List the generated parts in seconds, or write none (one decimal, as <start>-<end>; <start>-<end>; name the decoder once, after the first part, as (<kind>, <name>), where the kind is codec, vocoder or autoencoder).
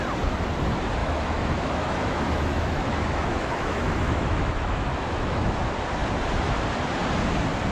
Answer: 1.0-5.6 (autoencoder, DAC-VAE)